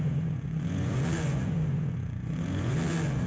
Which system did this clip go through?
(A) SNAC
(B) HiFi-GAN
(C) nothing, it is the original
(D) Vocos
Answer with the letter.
D